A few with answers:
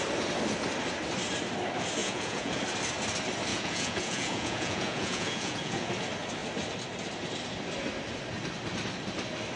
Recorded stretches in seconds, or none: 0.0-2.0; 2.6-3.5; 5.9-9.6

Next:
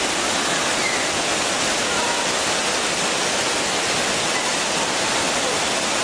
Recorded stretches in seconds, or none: 0.0-6.0

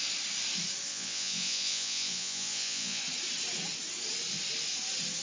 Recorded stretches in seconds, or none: 0.0-0.9; 3.0-5.2

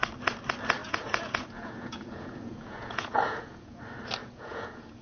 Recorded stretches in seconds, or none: 0.0-0.8; 3.8-4.2

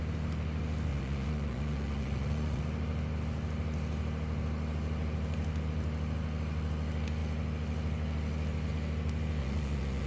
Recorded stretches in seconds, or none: 0.0-0.9; 2.6-9.4

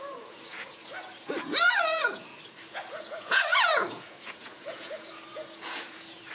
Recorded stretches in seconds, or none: 2.3-2.9

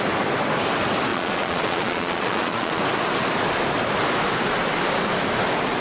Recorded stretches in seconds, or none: 0.0-1.1; 2.8-5.8

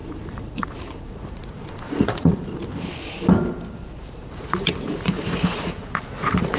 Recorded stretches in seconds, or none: 2.5-4.0